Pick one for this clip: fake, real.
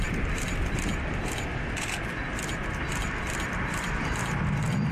real